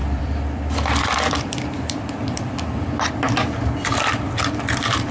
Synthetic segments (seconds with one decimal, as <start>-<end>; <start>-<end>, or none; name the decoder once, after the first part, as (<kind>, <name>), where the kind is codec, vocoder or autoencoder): 0.0-5.1 (vocoder, BigVGAN v2)